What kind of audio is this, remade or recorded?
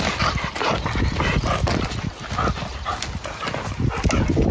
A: recorded